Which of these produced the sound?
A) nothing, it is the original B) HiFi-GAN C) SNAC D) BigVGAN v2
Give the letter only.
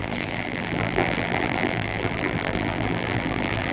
D